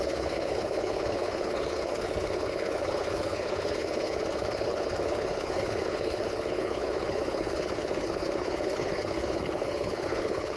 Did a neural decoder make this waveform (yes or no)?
yes